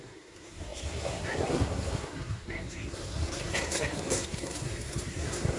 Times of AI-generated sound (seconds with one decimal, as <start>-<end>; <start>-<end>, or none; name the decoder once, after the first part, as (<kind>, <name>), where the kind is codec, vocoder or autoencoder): 0.0-5.6 (codec, SNAC)